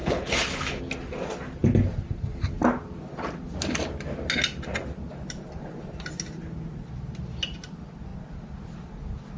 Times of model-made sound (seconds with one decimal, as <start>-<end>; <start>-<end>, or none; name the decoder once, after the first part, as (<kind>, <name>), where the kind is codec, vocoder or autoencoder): 0.0-0.8 (codec, HILCodec)